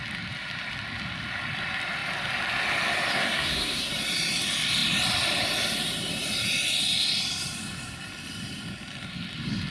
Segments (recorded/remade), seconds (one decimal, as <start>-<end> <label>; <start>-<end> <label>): 0.0-3.1 recorded; 3.1-3.9 remade; 3.9-9.7 recorded